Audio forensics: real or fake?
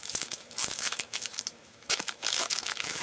fake